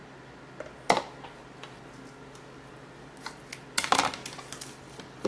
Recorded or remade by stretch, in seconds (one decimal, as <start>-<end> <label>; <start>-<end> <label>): 0.0-5.3 recorded